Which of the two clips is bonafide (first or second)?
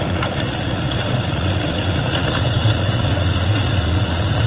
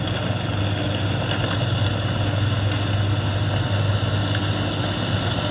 second